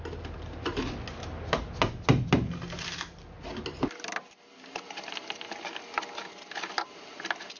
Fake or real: real